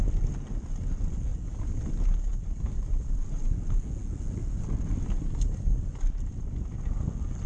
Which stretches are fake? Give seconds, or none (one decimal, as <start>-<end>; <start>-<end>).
1.3-1.8; 2.3-3.4; 4.4-6.5